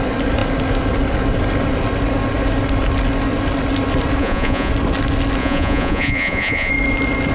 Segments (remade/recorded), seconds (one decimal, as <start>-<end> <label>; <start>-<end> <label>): 0.0-4.2 recorded; 4.2-4.7 remade; 4.7-5.4 recorded; 5.4-6.7 remade; 6.7-7.3 recorded